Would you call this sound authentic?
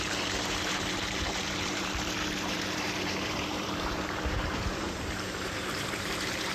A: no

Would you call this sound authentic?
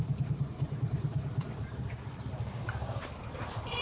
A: yes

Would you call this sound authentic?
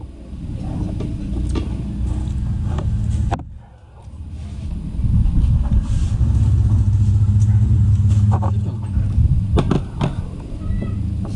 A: yes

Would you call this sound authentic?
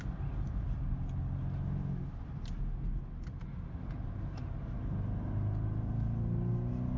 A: yes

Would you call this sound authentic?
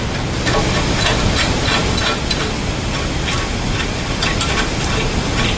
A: yes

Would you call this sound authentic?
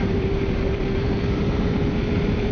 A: no